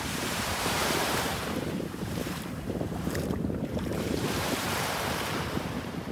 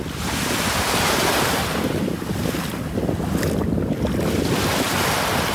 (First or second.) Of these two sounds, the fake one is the first